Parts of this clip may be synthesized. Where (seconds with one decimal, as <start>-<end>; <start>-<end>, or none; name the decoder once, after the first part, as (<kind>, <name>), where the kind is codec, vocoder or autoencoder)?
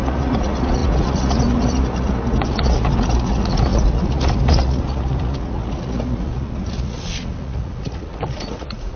0.0-9.0 (vocoder, Vocos)